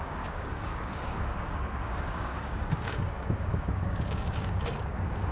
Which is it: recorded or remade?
remade